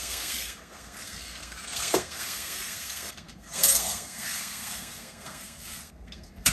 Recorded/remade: remade